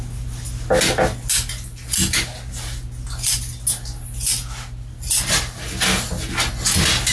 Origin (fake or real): real